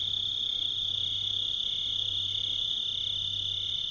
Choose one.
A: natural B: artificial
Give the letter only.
A